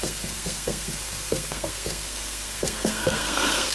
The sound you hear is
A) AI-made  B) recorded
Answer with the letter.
A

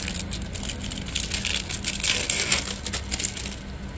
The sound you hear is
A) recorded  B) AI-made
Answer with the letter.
A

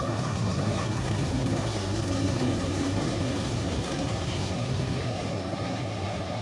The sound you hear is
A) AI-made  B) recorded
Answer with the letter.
A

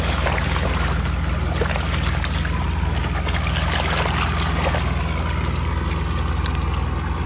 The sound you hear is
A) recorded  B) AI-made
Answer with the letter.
A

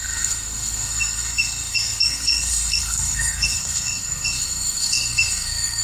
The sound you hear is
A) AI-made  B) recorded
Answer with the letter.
A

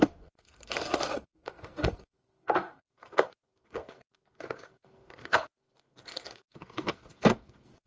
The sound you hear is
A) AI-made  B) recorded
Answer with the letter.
A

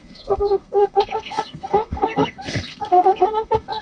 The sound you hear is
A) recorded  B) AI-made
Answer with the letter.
B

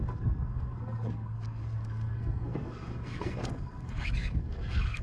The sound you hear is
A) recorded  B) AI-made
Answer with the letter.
B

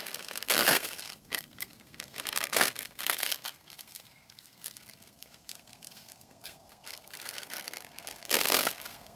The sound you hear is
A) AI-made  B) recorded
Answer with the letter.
A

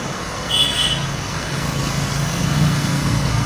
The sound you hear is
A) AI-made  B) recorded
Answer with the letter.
A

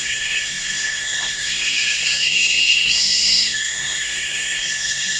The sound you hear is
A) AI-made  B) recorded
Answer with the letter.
A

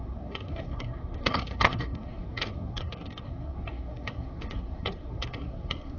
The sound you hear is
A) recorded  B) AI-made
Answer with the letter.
B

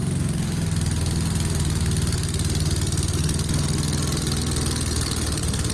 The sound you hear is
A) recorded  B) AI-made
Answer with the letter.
A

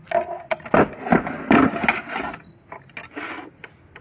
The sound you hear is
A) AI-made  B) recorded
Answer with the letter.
B